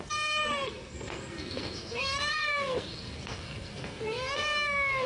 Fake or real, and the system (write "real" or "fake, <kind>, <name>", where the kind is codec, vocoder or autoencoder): fake, codec, SNAC